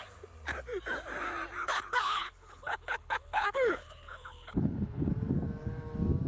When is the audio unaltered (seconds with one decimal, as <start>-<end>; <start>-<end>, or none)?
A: 0.0-1.6; 5.1-6.3